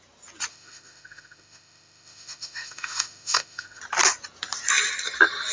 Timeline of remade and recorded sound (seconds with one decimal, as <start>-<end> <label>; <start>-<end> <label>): 0.0-0.5 recorded; 0.5-3.8 remade; 3.8-5.5 recorded